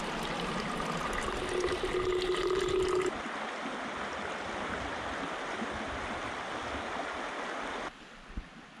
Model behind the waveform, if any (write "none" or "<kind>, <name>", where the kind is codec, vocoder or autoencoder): none